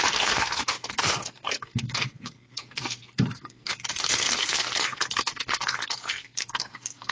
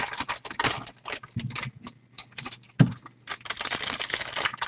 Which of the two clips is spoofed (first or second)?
first